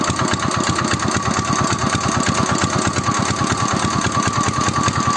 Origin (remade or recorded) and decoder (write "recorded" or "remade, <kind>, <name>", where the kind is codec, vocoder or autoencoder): recorded